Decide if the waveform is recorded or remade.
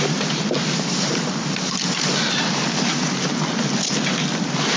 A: recorded